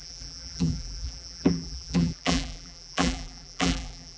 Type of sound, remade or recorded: remade